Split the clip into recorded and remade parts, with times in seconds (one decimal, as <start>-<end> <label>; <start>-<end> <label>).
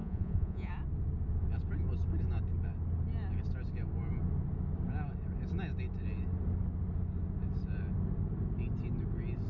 0.0-0.7 remade; 0.7-9.5 recorded